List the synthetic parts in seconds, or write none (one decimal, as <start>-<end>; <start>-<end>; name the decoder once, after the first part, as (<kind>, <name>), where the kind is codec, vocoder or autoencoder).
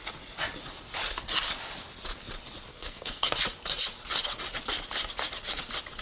2.7-3.3 (codec, SNAC)